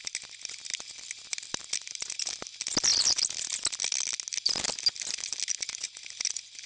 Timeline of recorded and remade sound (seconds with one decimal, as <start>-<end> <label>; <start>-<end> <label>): 0.0-6.7 recorded